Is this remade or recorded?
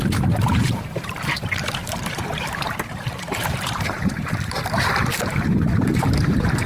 remade